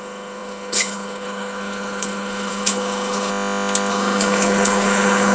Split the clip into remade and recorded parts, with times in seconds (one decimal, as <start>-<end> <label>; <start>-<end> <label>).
0.0-3.3 remade; 3.3-3.9 recorded; 3.9-5.3 remade